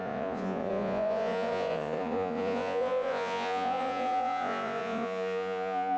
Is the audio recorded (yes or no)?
no